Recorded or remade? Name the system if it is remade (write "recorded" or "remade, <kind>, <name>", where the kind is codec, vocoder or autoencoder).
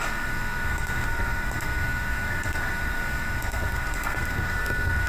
remade, codec, SNAC